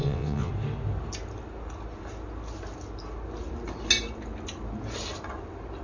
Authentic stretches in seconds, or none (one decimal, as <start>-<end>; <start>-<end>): 0.5-5.8